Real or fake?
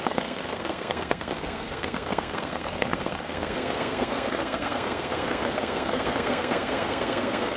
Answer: fake